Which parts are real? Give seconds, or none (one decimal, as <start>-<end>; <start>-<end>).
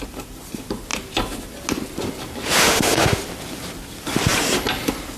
0.0-2.6; 3.2-5.2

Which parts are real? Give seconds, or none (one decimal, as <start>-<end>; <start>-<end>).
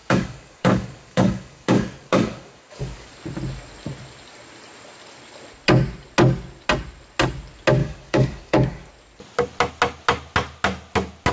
3.1-7.8; 8.9-11.3